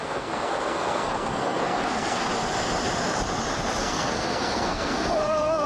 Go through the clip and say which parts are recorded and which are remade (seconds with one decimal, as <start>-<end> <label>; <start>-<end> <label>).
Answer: 0.0-2.3 remade; 2.3-3.8 recorded; 3.8-5.7 remade

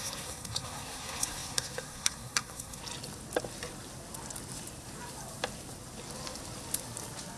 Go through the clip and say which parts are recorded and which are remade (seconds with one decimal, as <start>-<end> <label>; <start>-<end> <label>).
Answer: 0.0-2.8 remade; 2.8-7.4 recorded

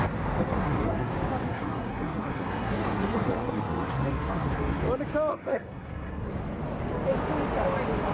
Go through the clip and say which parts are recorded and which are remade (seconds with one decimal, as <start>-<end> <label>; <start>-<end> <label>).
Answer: 0.0-0.5 recorded; 0.5-1.1 remade; 1.1-1.5 recorded; 1.5-4.8 remade; 4.8-5.3 recorded; 5.3-6.3 remade; 6.3-8.1 recorded

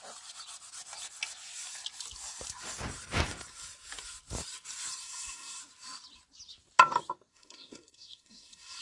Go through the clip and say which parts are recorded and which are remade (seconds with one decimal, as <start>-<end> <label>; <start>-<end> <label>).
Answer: 0.0-5.0 recorded; 5.0-5.6 remade; 5.6-7.3 recorded; 7.3-8.8 remade

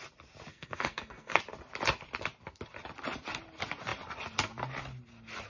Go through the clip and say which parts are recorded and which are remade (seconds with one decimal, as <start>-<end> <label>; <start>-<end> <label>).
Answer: 0.0-0.5 recorded; 0.5-1.4 remade; 1.4-5.5 recorded

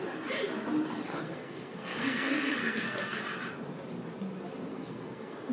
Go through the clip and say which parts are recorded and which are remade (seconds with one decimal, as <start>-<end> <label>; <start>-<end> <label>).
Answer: 0.0-1.1 recorded; 1.1-3.2 remade; 3.2-4.7 recorded; 4.7-5.5 remade

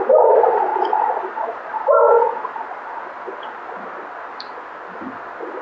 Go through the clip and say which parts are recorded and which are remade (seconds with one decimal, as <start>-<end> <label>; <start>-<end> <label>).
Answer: 0.0-5.6 recorded